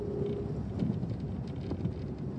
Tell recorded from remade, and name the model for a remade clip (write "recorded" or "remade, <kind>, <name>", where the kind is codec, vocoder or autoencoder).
recorded